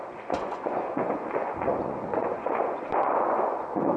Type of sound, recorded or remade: remade